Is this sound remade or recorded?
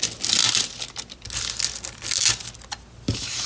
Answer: recorded